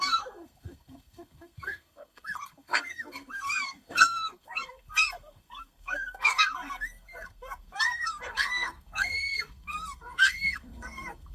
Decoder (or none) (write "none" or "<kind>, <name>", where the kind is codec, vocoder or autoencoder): codec, SNAC